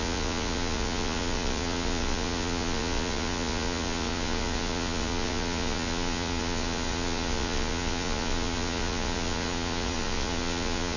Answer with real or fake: fake